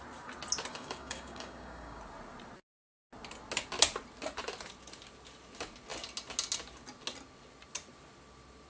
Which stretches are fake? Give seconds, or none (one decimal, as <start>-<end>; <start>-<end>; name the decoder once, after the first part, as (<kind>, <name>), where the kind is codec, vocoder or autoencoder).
0.7-2.0 (codec, DAC)